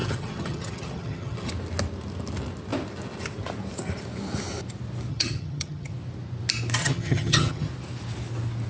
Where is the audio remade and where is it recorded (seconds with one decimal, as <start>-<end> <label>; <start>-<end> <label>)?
0.0-1.5 remade; 1.5-5.1 recorded; 5.1-5.9 remade; 5.9-6.8 recorded; 6.8-7.7 remade; 7.7-8.7 recorded